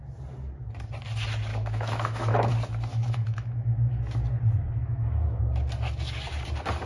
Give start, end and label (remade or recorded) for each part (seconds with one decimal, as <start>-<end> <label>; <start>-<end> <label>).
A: 0.0-1.5 recorded; 1.5-2.5 remade; 2.5-2.9 recorded; 2.9-4.0 remade; 4.0-4.8 recorded; 4.8-5.4 remade; 5.4-6.9 recorded

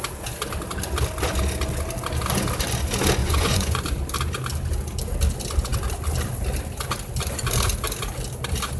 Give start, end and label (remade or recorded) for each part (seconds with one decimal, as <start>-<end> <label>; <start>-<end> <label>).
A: 0.0-3.2 recorded; 3.2-3.8 remade; 3.8-8.8 recorded

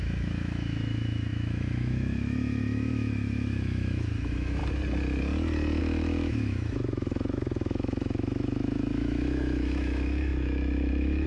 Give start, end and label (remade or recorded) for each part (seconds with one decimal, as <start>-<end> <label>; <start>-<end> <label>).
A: 0.0-4.6 remade; 4.6-5.8 recorded; 5.8-11.3 remade

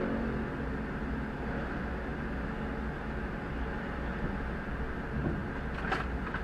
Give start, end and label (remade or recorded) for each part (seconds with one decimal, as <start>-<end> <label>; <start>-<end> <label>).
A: 0.0-6.4 recorded

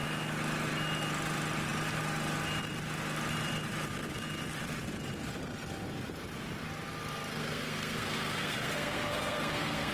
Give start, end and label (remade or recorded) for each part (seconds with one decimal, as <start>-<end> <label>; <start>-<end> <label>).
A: 0.0-7.3 recorded; 7.3-9.9 remade